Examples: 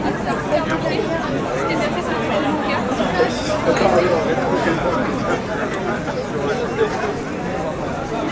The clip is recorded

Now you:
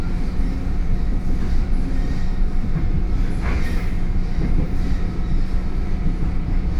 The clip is remade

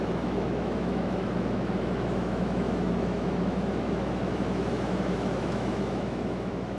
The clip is remade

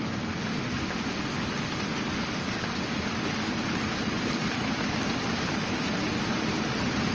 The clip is recorded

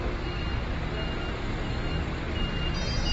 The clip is recorded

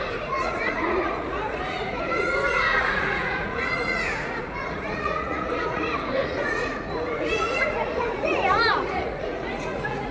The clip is remade